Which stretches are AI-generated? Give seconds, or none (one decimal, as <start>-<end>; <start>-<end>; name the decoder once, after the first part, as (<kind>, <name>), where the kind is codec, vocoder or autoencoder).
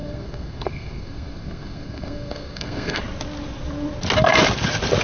0.0-3.0 (codec, SNAC)